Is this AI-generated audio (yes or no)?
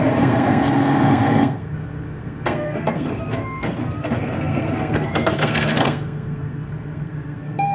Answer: yes